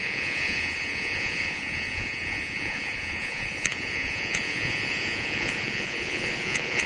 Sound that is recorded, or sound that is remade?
remade